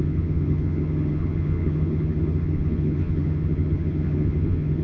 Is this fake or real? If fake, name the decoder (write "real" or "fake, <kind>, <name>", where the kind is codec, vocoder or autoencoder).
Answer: fake, vocoder, HiFi-GAN